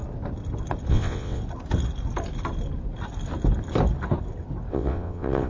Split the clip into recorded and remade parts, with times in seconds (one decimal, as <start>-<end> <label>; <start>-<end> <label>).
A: 0.0-0.9 recorded; 0.9-1.4 remade; 1.4-4.7 recorded; 4.7-5.5 remade